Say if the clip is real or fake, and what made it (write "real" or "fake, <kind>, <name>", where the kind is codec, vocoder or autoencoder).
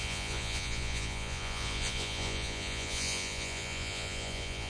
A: fake, vocoder, Vocos